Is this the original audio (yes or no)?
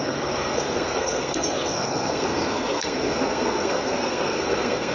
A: no